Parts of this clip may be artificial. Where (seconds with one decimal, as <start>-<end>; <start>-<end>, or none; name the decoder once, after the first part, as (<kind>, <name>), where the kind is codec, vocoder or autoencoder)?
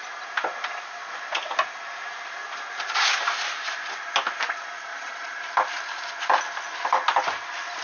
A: 4.9-5.4 (vocoder, Vocos)